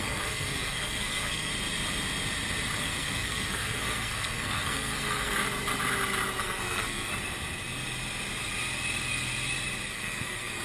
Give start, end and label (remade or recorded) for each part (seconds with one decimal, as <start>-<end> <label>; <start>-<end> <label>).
0.0-1.5 remade; 1.5-2.8 recorded; 2.8-5.4 remade; 5.4-6.4 recorded; 6.4-7.1 remade; 7.1-9.9 recorded; 9.9-10.6 remade